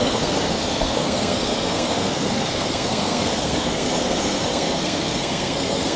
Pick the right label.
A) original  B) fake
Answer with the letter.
B